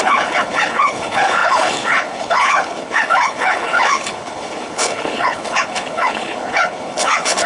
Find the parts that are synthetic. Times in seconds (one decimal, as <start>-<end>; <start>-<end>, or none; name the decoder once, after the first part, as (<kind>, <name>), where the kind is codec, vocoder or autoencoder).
0.0-7.5 (codec, HILCodec)